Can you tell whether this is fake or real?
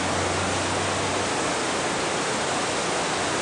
real